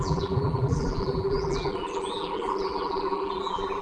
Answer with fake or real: fake